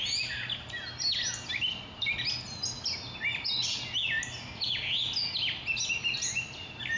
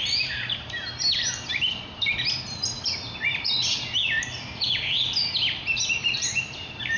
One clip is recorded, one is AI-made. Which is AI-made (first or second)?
second